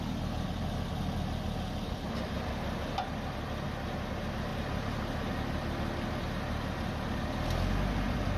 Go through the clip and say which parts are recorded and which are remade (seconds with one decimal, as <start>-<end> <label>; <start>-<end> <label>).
0.0-4.5 recorded; 4.5-5.3 remade; 5.3-8.4 recorded